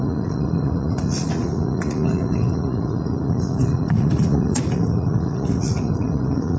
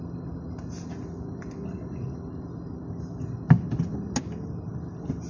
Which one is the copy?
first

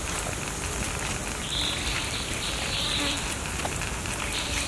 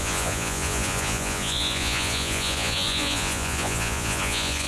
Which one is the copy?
second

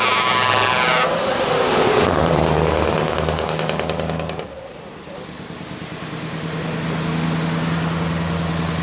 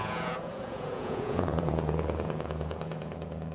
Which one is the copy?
second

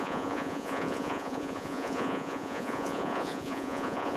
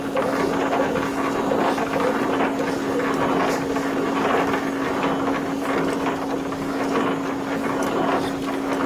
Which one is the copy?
first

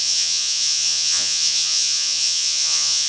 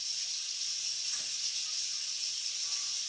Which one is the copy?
first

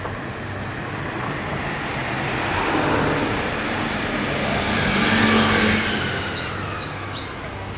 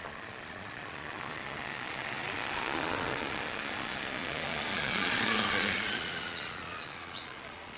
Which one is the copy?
second